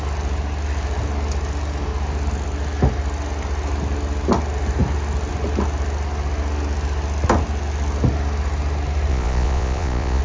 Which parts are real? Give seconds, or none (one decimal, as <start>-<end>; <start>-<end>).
0.0-9.1